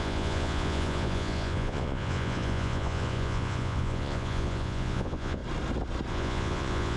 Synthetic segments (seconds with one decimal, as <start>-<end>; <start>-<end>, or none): 0.0-5.4; 6.1-7.0